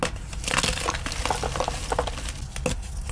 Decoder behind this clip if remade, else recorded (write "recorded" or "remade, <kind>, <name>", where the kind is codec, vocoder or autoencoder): recorded